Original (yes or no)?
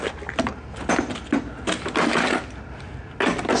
yes